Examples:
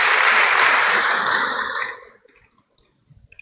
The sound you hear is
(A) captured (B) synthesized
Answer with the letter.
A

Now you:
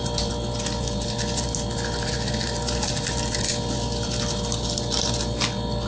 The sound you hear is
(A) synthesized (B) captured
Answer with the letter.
B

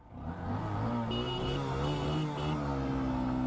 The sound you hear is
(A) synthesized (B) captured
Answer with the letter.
B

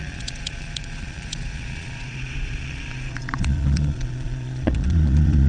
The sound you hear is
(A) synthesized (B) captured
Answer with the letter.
A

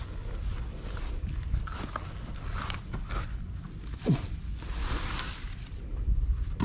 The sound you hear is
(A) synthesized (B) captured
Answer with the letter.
B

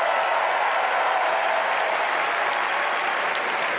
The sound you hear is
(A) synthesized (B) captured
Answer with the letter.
B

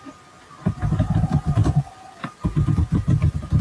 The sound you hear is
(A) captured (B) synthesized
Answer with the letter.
A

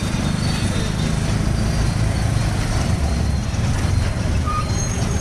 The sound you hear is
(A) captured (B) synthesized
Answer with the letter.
B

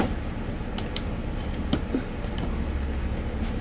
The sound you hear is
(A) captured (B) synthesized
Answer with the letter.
A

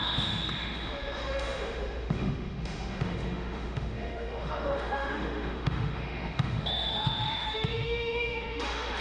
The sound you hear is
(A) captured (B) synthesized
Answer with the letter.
B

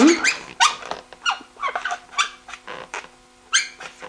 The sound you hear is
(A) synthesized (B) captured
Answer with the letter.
B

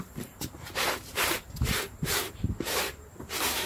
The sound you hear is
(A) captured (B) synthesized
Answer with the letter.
B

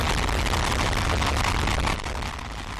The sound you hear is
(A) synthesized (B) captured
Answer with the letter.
B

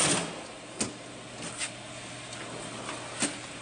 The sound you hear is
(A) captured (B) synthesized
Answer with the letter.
A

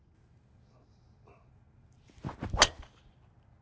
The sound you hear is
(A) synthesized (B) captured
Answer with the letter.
B